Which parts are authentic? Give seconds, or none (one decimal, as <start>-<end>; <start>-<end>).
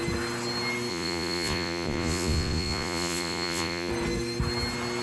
0.0-0.9; 3.9-5.0